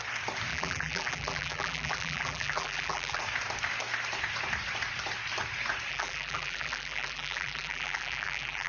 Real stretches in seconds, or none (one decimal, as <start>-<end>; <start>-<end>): 0.0-0.5; 3.2-5.9